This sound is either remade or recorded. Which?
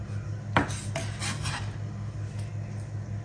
recorded